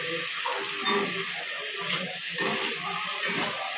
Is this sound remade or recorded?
remade